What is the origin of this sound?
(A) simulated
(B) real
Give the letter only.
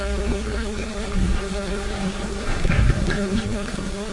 A